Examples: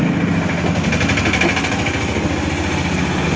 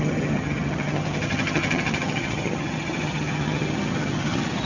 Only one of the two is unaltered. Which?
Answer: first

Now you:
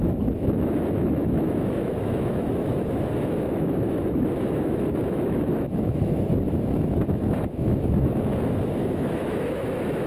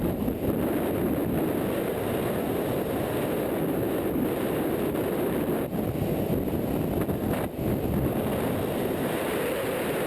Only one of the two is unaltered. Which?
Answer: second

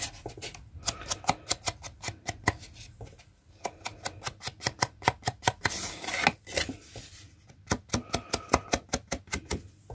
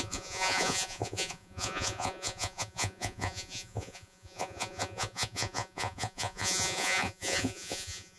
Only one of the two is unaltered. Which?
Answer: first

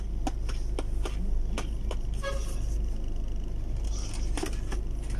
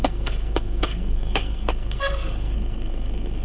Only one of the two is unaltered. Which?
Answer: first